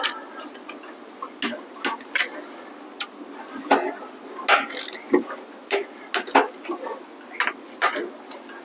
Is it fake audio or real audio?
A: real